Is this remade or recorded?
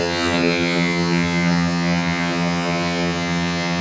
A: remade